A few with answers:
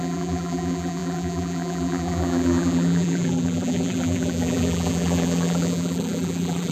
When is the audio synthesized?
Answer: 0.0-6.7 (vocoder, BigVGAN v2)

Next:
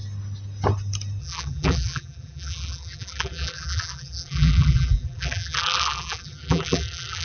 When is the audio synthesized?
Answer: 1.2-7.2 (vocoder, BigVGAN v2)